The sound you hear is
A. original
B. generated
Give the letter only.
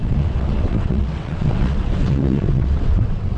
B